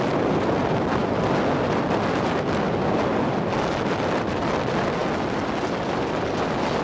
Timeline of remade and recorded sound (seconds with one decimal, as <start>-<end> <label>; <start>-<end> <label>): 0.0-6.8 recorded